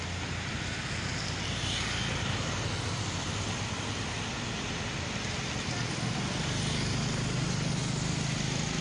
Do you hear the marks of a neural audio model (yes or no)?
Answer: no